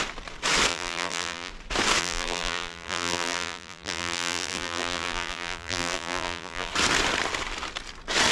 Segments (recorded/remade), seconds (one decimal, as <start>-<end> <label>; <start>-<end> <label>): 0.0-0.7 recorded; 0.7-1.5 remade; 1.5-2.0 recorded; 2.0-6.7 remade; 6.7-8.3 recorded